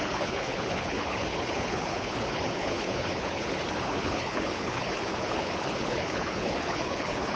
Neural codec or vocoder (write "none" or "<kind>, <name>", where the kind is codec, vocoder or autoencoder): codec, HILCodec